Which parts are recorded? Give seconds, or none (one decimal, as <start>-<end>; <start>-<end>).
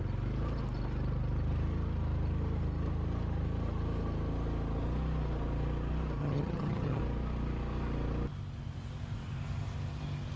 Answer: 0.0-6.2; 7.0-10.4